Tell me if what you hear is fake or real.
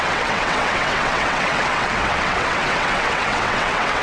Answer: fake